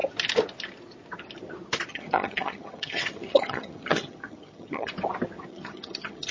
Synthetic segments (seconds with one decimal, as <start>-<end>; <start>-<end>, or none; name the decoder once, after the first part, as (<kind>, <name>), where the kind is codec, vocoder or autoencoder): 1.9-4.9 (vocoder, HiFi-GAN); 5.5-6.3